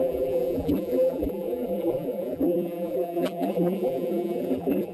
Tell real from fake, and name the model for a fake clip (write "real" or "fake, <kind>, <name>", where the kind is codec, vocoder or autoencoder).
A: fake, vocoder, BigVGAN v2